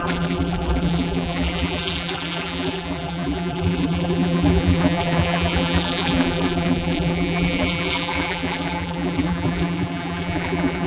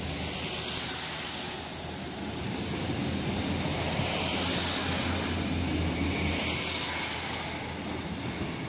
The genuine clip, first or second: second